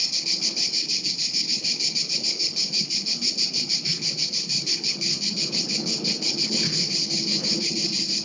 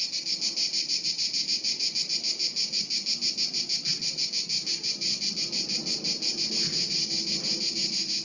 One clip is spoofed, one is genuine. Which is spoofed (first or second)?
first